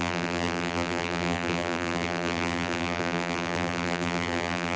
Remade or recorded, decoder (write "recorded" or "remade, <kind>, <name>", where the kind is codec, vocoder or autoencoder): remade, vocoder, BigVGAN v2